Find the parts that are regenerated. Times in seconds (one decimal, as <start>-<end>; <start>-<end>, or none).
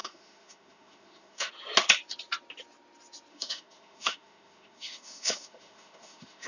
0.0-1.5; 3.3-6.5